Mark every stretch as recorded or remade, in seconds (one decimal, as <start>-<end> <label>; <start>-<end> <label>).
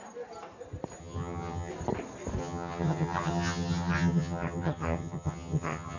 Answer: 0.0-1.0 recorded; 1.0-1.7 remade; 1.7-2.4 recorded; 2.4-6.0 remade